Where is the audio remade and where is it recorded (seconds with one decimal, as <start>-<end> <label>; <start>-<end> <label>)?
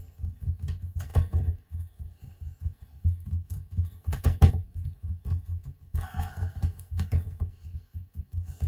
0.0-8.7 remade